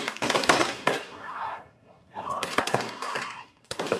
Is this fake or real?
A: fake